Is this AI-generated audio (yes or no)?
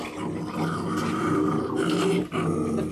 no